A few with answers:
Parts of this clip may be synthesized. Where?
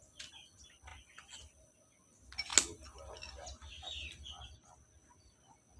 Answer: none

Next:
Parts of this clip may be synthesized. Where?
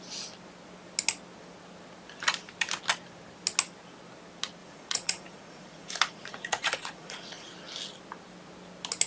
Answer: 4.6-7.5 (vocoder, Vocos)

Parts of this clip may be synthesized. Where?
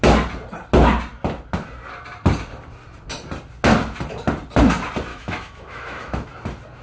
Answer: 5.1-6.3 (autoencoder, DAC-VAE)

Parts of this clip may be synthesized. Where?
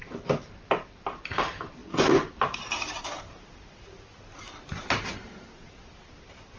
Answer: none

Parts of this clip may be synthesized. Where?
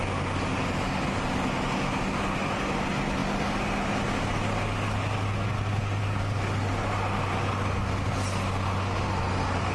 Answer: none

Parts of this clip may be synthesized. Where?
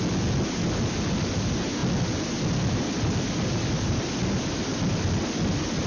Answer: none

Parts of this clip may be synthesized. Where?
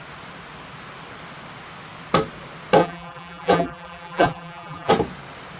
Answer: 2.8-4.9 (vocoder, BigVGAN v2)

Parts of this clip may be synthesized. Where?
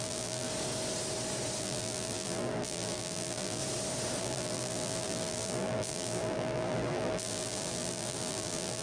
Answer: 0.0-0.5 (vocoder, BigVGAN v2); 1.6-3.6; 4.2-8.8